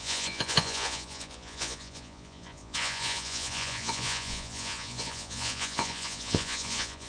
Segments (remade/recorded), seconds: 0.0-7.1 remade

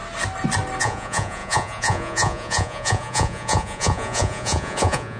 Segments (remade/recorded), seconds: 0.0-0.8 recorded; 0.8-5.2 remade

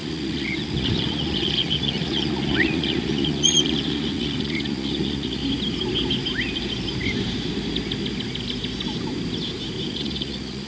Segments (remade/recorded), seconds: 0.0-5.4 remade; 5.4-9.9 recorded; 9.9-10.7 remade

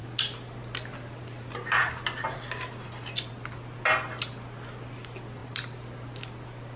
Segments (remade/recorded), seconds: 0.0-6.8 recorded

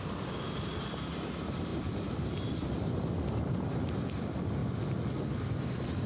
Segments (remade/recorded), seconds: 0.0-6.1 recorded

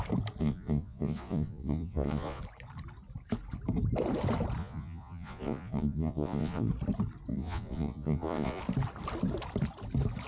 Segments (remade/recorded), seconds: 0.0-0.4 recorded; 0.4-2.4 remade; 2.4-4.6 recorded; 4.6-6.7 remade; 6.7-7.3 recorded; 7.3-8.6 remade; 8.6-10.3 recorded